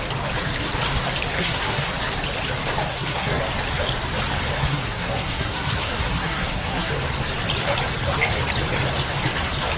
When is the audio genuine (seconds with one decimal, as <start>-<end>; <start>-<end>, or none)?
0.0-1.3; 1.9-2.9; 3.4-4.6; 6.9-9.8